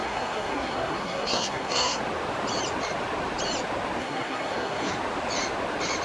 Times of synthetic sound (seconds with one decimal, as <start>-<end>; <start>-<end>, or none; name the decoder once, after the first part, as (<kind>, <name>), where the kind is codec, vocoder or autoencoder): 0.0-2.0 (codec, SNAC); 4.0-4.9